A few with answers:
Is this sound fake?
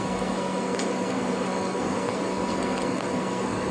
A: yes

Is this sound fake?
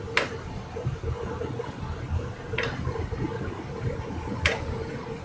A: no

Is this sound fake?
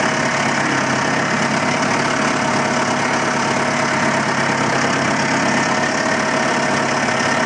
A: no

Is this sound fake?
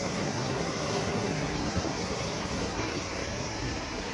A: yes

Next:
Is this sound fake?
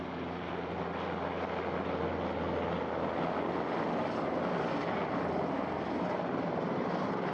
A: no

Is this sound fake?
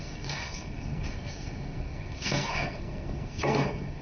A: yes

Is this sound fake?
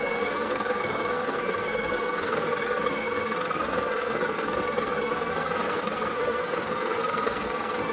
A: yes